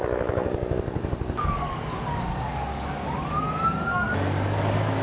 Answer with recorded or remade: remade